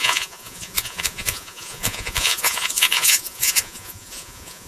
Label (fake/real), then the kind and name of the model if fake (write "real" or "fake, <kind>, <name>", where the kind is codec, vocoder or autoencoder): fake, vocoder, Vocos